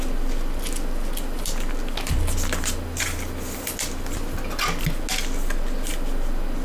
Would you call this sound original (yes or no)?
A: yes